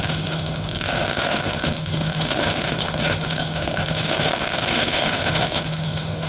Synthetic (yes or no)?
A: yes